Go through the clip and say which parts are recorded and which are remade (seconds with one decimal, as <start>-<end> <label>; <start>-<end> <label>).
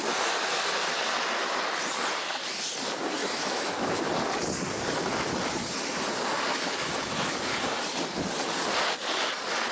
0.0-3.2 recorded; 3.2-4.0 remade; 4.0-6.5 recorded; 6.5-7.3 remade; 7.3-9.7 recorded